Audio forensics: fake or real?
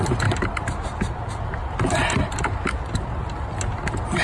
real